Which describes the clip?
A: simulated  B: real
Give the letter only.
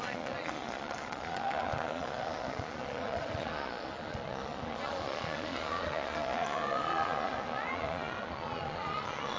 A